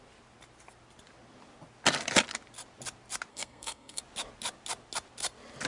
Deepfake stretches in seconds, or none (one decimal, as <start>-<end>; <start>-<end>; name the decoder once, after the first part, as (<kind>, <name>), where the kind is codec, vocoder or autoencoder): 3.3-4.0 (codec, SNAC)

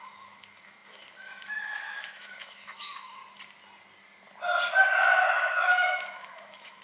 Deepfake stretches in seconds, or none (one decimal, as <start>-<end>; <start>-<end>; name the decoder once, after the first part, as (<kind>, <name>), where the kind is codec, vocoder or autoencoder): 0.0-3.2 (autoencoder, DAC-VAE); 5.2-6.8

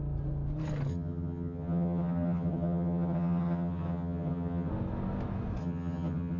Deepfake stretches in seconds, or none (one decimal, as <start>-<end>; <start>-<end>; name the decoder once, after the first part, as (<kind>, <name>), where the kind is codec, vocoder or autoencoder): 0.9-4.7 (vocoder, HiFi-GAN); 5.6-6.4